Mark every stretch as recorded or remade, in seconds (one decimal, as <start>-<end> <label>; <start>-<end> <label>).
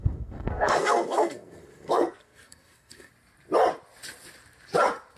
0.0-3.1 remade; 3.1-5.2 recorded